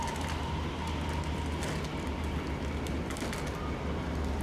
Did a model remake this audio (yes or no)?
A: no